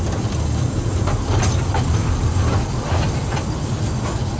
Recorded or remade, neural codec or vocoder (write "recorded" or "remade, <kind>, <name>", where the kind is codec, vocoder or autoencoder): recorded